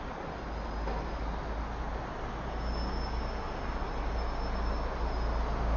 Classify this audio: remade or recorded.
recorded